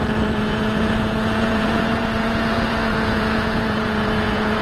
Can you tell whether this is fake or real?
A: fake